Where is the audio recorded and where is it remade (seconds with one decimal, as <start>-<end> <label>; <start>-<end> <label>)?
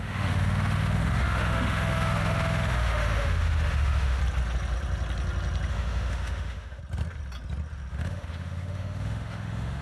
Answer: 0.0-4.2 remade; 4.2-5.7 recorded; 5.7-6.8 remade; 6.8-7.9 recorded; 7.9-9.8 remade